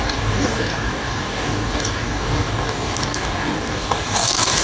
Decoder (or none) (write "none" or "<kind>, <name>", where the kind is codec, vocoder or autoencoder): codec, DAC